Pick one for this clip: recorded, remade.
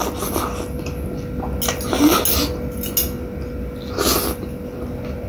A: recorded